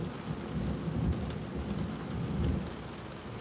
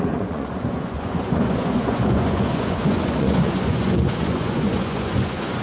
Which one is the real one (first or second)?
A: first